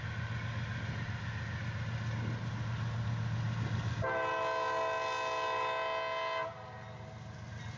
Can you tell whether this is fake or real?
real